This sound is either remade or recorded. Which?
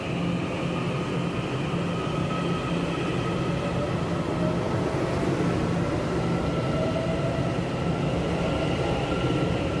recorded